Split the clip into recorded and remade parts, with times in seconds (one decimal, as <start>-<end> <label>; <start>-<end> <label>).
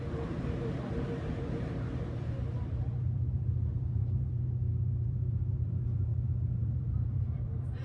0.0-6.1 remade; 6.1-6.6 recorded; 6.6-7.8 remade